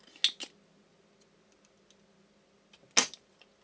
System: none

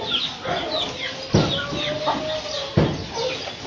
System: none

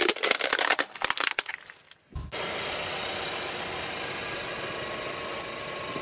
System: none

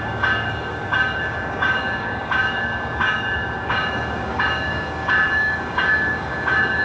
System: codec, DAC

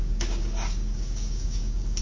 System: codec, DAC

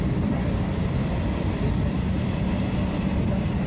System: none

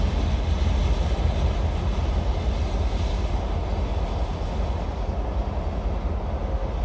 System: none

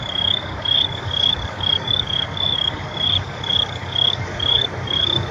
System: codec, DAC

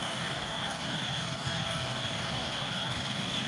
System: codec, DAC